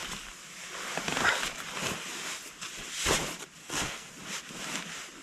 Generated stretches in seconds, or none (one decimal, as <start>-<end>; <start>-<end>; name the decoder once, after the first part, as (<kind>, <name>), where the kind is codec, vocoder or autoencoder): 3.6-4.1 (codec, SNAC)